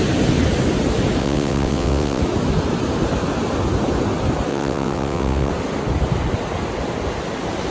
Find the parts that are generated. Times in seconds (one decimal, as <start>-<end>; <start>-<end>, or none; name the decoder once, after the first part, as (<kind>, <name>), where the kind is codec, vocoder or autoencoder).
1.2-2.2 (vocoder, WaveNeXt); 4.5-5.5